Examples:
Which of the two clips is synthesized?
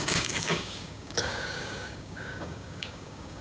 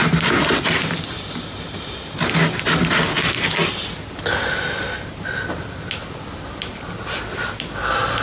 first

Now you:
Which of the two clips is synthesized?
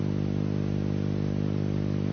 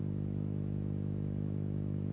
second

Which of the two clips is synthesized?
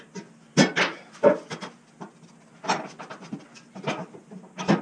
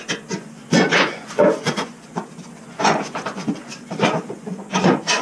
second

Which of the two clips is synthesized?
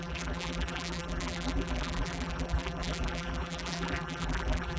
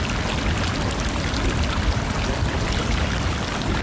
first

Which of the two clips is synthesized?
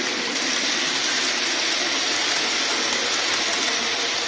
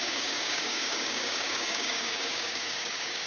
second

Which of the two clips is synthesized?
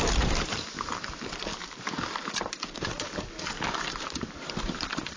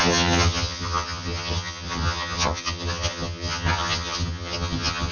second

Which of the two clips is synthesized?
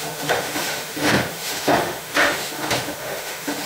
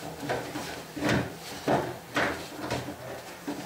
first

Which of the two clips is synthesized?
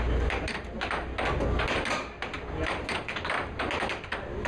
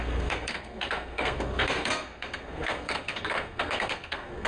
second